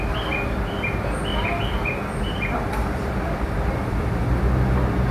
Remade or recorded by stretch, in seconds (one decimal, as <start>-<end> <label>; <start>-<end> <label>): 0.0-1.3 recorded; 1.3-4.4 remade; 4.4-5.1 recorded